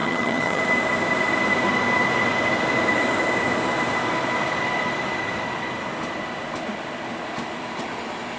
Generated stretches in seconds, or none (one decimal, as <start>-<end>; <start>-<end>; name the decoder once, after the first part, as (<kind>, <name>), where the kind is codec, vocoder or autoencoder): 0.0-0.6 (vocoder, HiFi-GAN)